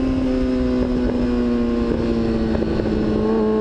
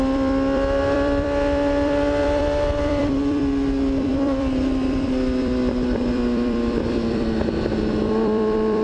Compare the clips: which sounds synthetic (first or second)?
second